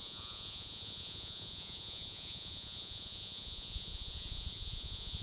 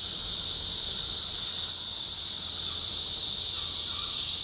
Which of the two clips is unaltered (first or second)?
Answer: second